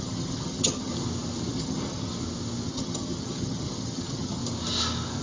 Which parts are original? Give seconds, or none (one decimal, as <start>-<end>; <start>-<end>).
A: 0.9-1.5; 2.1-2.7; 4.4-5.2